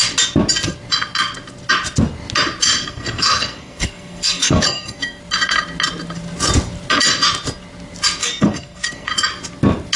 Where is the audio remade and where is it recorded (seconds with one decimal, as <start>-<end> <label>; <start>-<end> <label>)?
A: 0.0-2.8 recorded; 2.8-5.2 remade; 5.2-8.2 recorded; 8.2-9.1 remade; 9.1-10.0 recorded